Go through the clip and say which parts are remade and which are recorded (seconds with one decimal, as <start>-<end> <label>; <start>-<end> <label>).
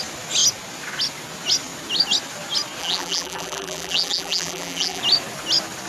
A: 0.0-2.8 recorded; 2.8-5.0 remade; 5.0-5.9 recorded